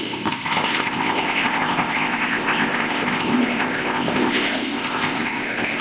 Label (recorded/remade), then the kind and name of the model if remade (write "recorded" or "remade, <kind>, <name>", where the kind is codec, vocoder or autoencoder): remade, codec, ZipCodec